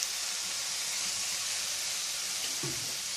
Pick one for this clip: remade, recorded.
recorded